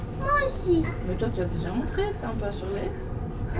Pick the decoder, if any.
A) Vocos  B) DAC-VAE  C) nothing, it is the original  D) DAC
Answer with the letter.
C